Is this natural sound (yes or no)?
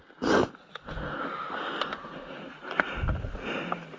yes